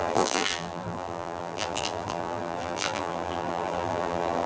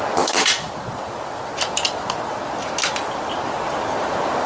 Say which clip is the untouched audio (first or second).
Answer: second